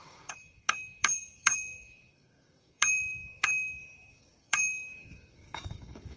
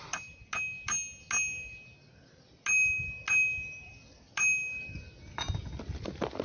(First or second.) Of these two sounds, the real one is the second